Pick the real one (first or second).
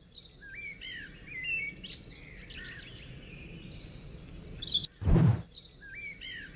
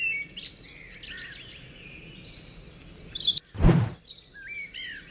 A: second